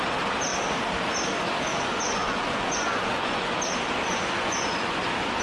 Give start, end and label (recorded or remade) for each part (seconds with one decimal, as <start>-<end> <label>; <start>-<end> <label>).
0.0-1.7 recorded; 1.7-3.5 remade; 3.5-4.1 recorded; 4.1-5.0 remade; 5.0-5.4 recorded